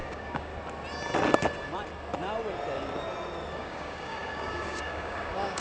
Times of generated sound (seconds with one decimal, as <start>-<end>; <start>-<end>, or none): 0.0-0.5; 3.5-5.6